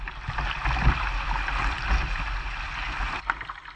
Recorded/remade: recorded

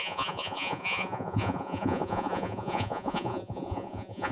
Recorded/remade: remade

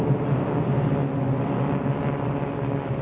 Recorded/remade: recorded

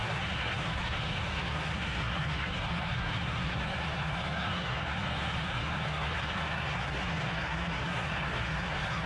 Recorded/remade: remade